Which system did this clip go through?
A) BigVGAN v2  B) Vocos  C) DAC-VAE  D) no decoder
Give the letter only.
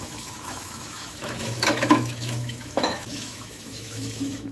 C